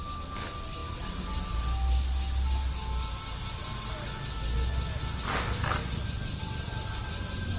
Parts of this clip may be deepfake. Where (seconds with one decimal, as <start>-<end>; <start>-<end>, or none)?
none